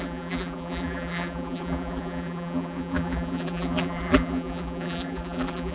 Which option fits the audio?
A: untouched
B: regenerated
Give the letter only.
B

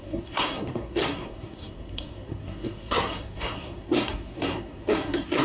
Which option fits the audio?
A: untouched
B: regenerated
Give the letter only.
B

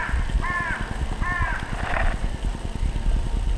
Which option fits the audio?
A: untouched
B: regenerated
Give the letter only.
A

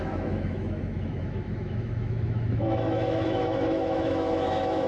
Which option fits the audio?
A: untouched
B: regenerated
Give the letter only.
B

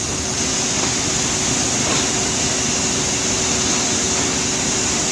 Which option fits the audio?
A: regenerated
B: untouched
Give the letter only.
B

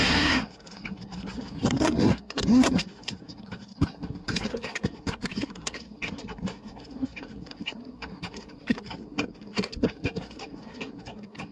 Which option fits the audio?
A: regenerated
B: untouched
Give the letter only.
A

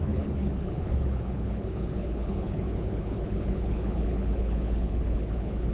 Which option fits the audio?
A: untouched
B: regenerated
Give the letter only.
B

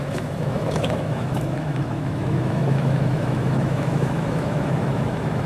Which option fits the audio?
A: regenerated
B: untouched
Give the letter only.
A